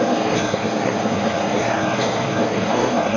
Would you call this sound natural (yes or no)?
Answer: no